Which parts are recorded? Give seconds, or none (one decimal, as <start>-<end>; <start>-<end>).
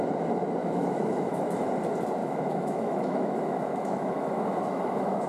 0.0-0.6; 1.7-2.2